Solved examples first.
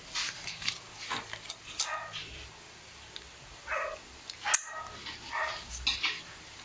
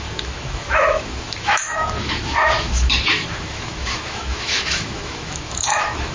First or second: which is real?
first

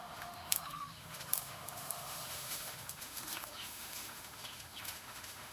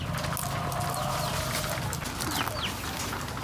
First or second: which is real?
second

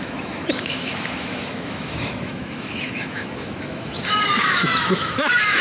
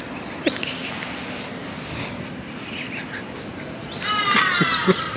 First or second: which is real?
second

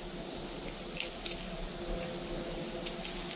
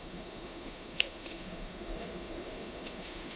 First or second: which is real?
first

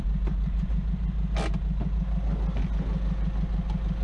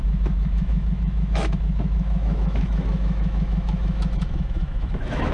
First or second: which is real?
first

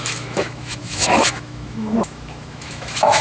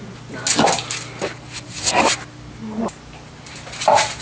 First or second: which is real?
second